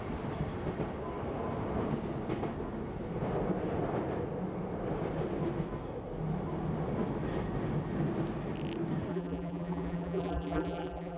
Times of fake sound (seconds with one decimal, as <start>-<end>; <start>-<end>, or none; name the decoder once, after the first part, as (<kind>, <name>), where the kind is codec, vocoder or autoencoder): 9.1-11.2 (vocoder, BigVGAN v2)